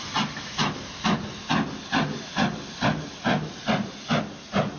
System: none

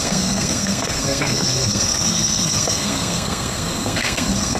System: codec, SNAC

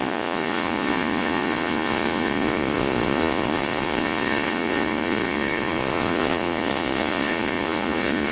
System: vocoder, Vocos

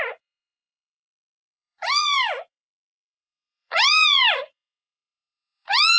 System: vocoder, Vocos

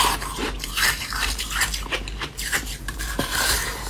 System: vocoder, BigVGAN v2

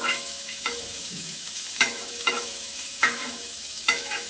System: autoencoder, DAC-VAE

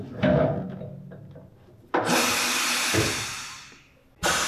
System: none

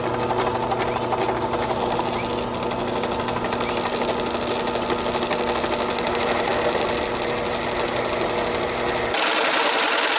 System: none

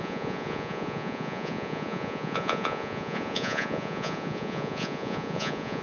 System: vocoder, Vocos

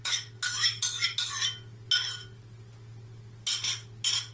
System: none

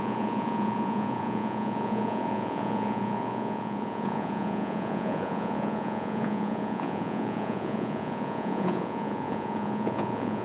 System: vocoder, Vocos